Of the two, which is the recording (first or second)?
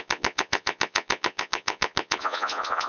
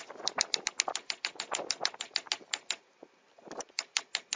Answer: second